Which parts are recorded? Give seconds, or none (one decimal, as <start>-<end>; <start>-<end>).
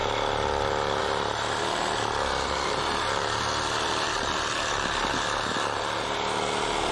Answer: 0.0-6.9